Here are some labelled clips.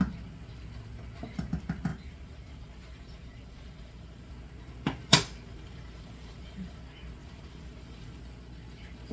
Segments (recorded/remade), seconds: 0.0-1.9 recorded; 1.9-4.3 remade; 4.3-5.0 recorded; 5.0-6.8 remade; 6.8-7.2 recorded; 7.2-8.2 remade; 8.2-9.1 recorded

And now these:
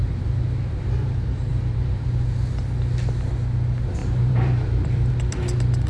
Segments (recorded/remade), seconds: 0.0-2.0 remade; 2.0-4.0 recorded; 4.0-5.1 remade; 5.1-5.9 recorded